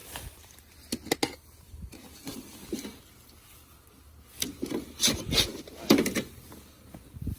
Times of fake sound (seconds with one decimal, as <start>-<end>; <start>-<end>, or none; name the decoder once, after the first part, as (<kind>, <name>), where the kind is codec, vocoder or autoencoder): none